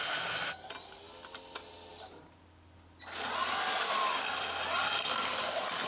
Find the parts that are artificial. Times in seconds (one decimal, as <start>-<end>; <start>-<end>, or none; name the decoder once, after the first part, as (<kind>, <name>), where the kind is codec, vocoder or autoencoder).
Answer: none